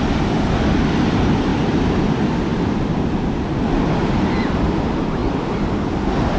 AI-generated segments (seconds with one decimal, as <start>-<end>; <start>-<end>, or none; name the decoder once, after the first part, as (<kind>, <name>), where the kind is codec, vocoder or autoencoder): none